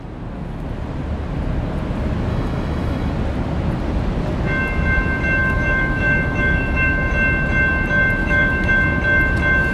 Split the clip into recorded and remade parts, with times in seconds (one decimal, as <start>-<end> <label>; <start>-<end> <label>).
0.0-2.3 recorded; 2.3-3.1 remade; 3.1-5.4 recorded; 5.4-7.1 remade; 7.1-8.2 recorded; 8.2-8.7 remade; 8.7-9.7 recorded